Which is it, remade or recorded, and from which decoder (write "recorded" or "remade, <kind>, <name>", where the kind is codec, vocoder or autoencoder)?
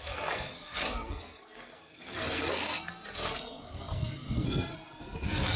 remade, codec, SNAC